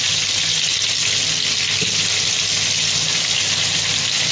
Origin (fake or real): real